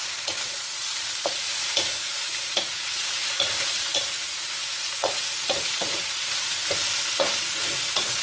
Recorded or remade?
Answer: remade